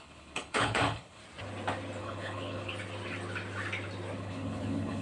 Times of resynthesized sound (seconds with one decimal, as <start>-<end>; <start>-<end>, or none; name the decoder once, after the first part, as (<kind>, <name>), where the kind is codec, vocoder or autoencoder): 0.0-1.2 (codec, HILCodec); 2.0-2.7; 4.2-5.0